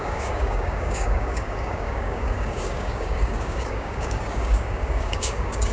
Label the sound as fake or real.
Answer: fake